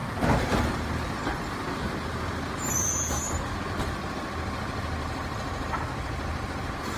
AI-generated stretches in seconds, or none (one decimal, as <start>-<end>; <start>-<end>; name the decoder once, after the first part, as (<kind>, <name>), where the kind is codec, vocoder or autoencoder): 5.0-5.8 (vocoder, BigVGAN v2)